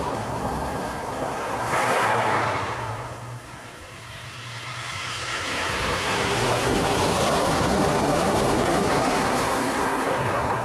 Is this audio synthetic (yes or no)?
yes